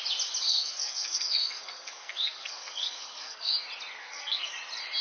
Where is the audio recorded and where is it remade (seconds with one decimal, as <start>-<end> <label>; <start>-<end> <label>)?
0.0-0.5 recorded; 0.5-3.5 remade; 3.5-4.0 recorded; 4.0-4.5 remade; 4.5-5.0 recorded